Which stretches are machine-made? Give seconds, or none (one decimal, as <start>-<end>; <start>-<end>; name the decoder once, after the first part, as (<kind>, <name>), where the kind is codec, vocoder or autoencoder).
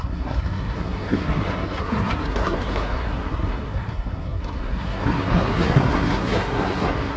0.0-7.2 (codec, SNAC)